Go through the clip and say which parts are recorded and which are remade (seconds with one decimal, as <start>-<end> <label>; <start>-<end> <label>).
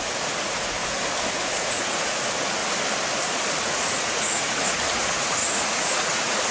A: 0.0-0.8 remade; 0.8-1.6 recorded; 1.6-2.6 remade; 2.6-3.6 recorded; 3.6-6.5 remade